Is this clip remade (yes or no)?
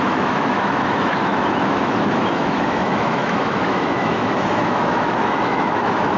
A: yes